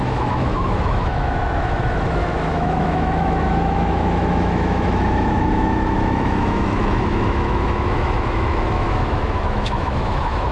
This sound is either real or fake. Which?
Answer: fake